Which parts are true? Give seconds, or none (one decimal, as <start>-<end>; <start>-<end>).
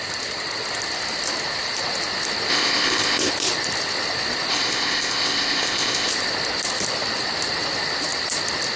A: 0.0-2.5; 3.3-4.5; 6.1-8.8